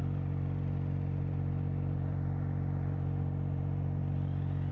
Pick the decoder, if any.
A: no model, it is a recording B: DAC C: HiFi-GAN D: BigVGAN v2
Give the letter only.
D